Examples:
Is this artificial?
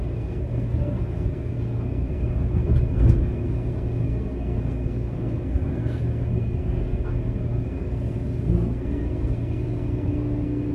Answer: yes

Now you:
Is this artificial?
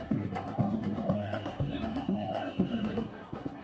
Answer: yes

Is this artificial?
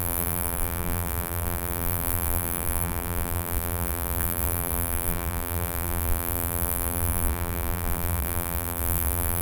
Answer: yes